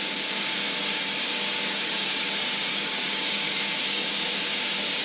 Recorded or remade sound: remade